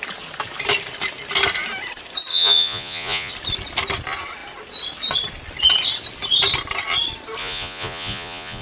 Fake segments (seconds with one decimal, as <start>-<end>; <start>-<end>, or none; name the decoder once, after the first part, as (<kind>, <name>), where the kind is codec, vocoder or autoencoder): 2.3-3.3 (vocoder, Vocos); 7.4-8.6

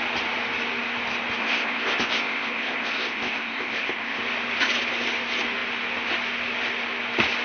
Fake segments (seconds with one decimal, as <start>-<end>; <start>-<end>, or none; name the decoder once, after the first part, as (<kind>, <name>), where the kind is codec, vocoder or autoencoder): 1.4-4.2 (codec, ZipCodec)